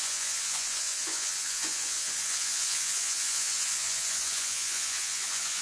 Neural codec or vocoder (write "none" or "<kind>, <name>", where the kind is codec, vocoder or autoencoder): vocoder, Vocos